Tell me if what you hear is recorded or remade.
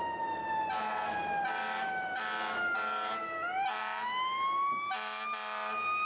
recorded